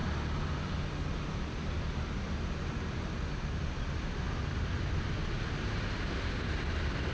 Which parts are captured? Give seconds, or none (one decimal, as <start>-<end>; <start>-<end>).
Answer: 0.0-7.1